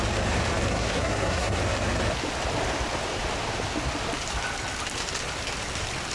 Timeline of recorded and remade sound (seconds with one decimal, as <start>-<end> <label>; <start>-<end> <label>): 0.0-0.7 recorded; 0.7-1.6 remade; 1.6-6.1 recorded